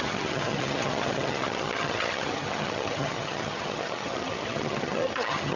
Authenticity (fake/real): fake